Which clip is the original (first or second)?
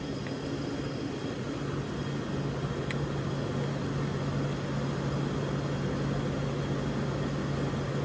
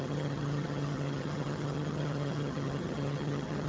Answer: first